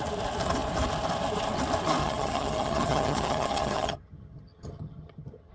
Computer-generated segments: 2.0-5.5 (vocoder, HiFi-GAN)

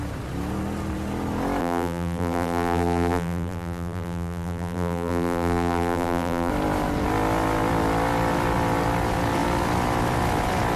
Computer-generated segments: 1.6-6.5 (vocoder, BigVGAN v2)